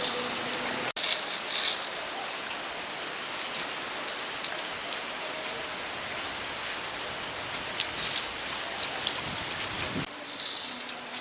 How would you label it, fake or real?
real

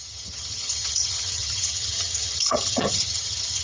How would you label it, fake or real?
fake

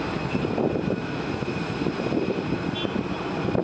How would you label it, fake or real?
fake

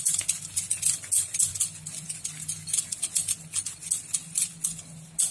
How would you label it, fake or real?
real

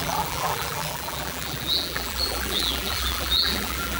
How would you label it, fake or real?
fake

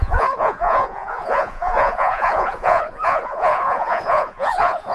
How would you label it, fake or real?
fake